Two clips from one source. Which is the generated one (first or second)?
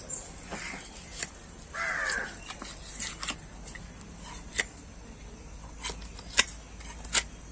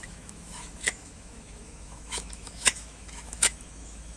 second